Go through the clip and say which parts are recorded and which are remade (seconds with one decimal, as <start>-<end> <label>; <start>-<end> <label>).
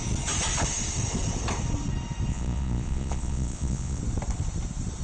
0.0-2.3 recorded; 2.3-4.0 remade; 4.0-5.0 recorded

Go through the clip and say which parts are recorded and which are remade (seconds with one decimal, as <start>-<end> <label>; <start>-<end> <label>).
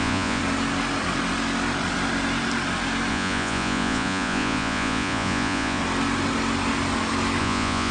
0.0-0.4 remade; 0.4-3.1 recorded; 3.1-5.8 remade; 5.8-7.4 recorded; 7.4-7.9 remade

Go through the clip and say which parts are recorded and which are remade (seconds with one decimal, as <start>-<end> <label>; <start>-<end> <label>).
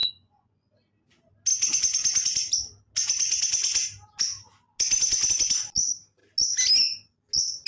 0.0-0.7 remade; 0.7-7.7 recorded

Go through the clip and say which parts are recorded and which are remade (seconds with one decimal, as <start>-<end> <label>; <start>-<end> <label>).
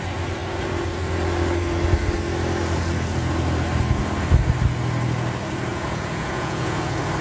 0.0-5.7 recorded; 5.7-6.8 remade; 6.8-7.2 recorded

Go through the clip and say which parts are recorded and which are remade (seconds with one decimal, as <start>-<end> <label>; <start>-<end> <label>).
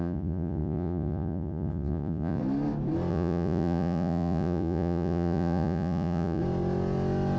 0.0-2.4 remade; 2.4-3.1 recorded; 3.1-6.4 remade; 6.4-7.4 recorded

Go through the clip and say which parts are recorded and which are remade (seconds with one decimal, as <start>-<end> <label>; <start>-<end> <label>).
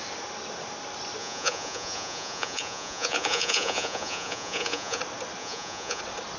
0.0-1.2 recorded; 1.2-5.0 remade; 5.0-5.4 recorded; 5.4-6.0 remade; 6.0-6.4 recorded